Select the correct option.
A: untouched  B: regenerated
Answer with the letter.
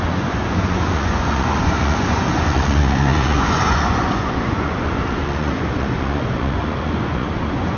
B